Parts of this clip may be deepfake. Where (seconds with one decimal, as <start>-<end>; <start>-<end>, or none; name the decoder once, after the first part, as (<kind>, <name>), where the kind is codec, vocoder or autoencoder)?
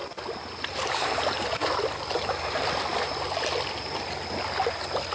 0.0-3.1 (vocoder, BigVGAN v2)